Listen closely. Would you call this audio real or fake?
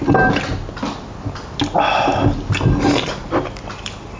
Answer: real